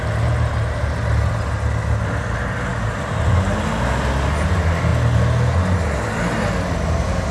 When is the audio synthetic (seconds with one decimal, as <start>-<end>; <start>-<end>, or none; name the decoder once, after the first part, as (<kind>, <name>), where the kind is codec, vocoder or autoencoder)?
none

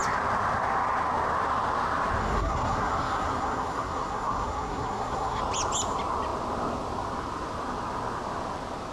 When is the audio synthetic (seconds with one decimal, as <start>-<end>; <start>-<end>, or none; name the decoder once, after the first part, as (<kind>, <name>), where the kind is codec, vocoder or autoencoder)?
2.2-5.4 (codec, SNAC)

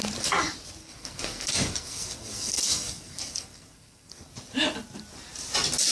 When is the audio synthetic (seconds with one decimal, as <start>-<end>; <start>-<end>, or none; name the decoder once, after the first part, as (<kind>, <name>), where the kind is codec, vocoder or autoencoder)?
0.8-4.3 (codec, SNAC)

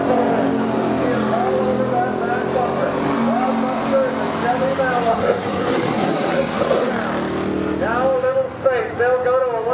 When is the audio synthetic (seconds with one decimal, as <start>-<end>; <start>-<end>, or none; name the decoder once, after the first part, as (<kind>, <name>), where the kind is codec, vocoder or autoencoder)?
5.1-6.9 (codec, SNAC)

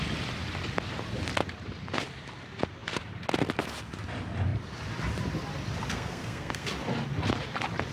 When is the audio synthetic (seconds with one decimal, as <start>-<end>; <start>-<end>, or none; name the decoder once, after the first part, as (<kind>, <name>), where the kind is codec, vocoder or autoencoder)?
5.9-6.7 (codec, SNAC)

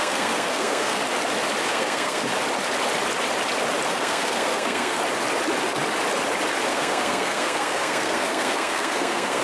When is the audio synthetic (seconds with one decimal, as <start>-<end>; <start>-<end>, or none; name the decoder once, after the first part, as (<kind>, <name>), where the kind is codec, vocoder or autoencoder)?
0.0-1.0 (codec, SNAC); 1.6-2.3; 3.9-5.0; 6.7-9.4

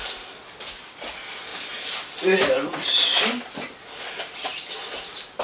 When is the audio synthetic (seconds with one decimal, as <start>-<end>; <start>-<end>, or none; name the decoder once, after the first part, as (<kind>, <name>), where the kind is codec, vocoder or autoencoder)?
none

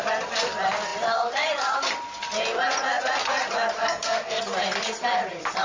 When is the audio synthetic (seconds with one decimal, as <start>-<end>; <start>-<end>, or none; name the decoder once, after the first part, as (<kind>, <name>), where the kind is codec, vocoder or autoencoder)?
3.8-4.4 (codec, SNAC)